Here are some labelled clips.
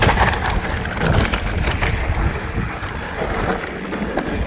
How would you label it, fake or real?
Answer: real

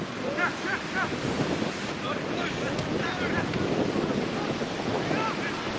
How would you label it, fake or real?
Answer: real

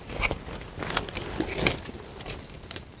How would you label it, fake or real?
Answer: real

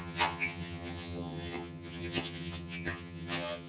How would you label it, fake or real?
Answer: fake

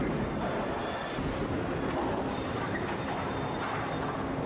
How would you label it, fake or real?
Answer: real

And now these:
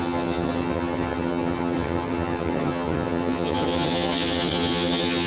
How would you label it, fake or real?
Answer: fake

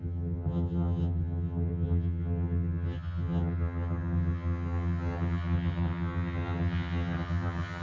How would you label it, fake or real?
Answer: fake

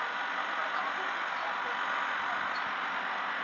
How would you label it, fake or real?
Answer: real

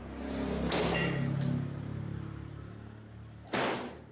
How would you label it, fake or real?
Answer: real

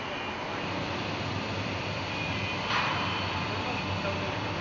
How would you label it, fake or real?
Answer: real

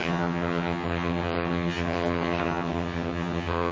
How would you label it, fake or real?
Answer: fake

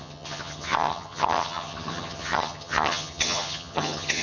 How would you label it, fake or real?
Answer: fake